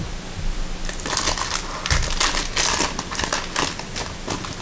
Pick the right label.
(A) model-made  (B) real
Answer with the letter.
B